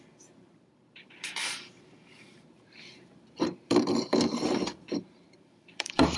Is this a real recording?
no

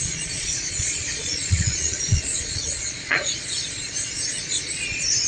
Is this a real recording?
no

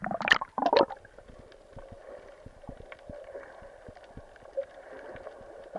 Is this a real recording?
yes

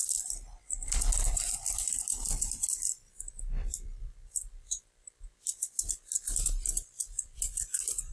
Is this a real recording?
no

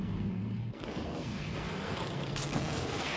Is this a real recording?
no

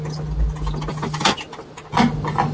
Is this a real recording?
yes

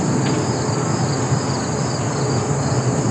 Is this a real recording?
yes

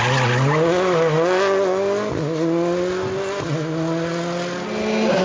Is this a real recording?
yes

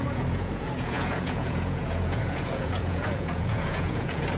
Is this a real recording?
no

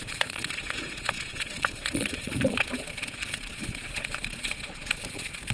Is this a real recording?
no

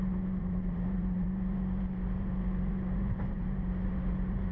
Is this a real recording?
no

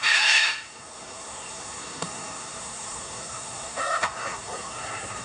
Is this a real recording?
no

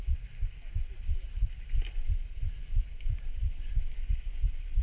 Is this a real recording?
yes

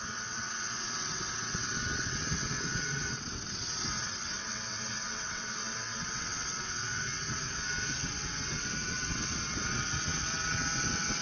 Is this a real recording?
no